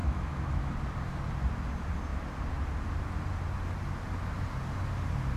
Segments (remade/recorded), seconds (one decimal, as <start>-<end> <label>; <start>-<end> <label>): 0.0-0.7 remade; 0.7-5.4 recorded